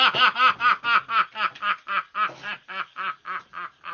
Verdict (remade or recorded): recorded